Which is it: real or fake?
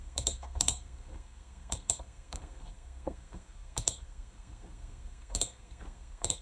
fake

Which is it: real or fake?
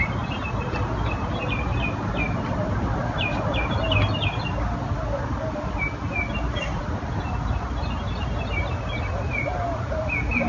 real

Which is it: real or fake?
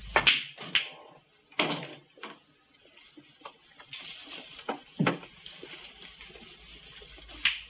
real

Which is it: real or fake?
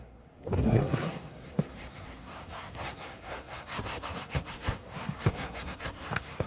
fake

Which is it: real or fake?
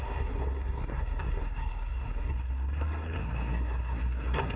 fake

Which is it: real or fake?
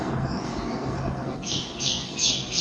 fake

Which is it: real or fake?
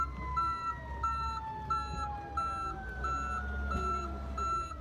real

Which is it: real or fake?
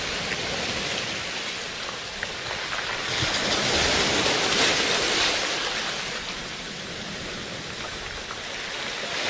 real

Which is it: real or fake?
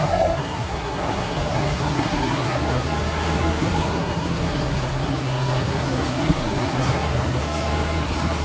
fake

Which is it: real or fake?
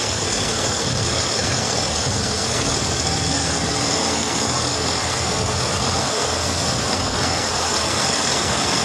fake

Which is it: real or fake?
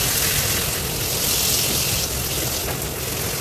real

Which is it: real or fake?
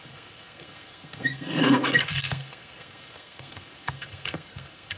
fake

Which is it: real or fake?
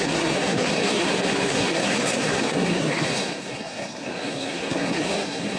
fake